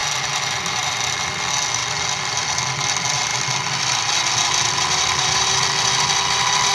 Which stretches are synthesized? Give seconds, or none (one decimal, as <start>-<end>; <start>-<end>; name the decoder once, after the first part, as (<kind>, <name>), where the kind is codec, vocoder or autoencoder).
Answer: none